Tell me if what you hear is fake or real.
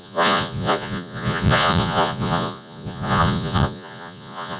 fake